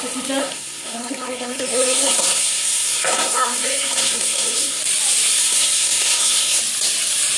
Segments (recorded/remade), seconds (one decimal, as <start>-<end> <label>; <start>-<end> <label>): 0.0-0.4 recorded; 0.4-4.8 remade; 4.8-5.3 recorded; 5.3-6.6 remade; 6.6-7.4 recorded